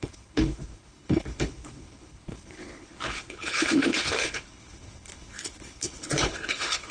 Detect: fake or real fake